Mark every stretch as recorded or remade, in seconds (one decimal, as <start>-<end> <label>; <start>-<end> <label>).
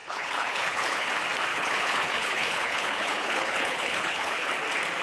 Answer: 0.0-1.1 remade; 1.1-1.5 recorded; 1.5-4.5 remade; 4.5-5.0 recorded